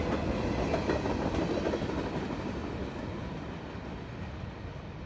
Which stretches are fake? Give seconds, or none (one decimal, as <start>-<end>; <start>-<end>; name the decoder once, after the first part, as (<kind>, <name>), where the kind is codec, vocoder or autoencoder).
none